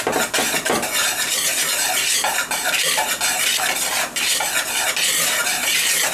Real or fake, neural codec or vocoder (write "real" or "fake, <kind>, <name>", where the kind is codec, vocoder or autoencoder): real